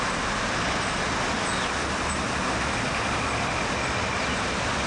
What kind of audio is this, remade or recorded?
recorded